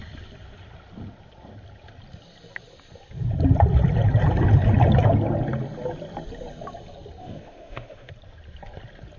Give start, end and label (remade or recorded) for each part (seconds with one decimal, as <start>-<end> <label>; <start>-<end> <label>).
0.0-7.2 recorded; 7.2-8.1 remade; 8.1-9.2 recorded